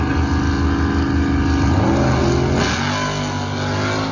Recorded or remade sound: recorded